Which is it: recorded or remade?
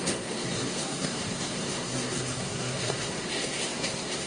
remade